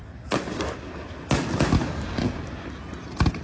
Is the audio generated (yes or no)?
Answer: no